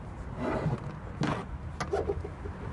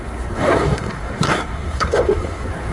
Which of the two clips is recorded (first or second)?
first